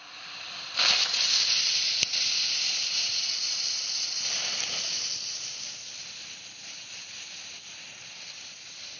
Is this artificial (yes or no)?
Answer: yes